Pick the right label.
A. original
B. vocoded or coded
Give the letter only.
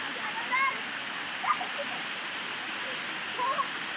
A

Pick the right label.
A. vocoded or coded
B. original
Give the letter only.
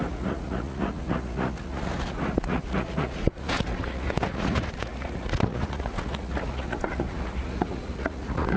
A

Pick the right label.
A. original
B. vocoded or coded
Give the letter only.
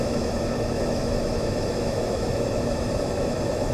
B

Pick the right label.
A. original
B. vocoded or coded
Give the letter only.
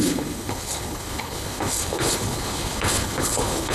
B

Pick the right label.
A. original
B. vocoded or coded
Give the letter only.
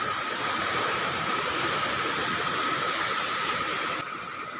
B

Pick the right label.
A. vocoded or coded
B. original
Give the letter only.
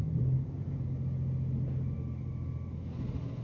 B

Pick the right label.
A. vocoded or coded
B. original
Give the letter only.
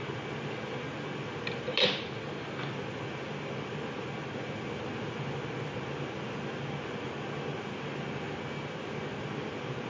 B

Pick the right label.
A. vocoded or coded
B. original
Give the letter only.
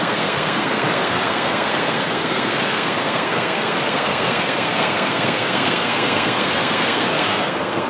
A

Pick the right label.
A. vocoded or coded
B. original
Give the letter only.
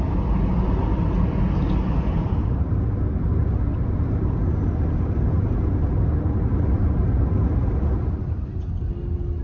B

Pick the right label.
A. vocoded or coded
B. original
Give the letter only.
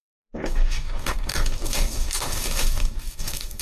A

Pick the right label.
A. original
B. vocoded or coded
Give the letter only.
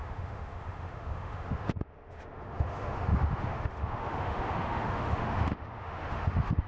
B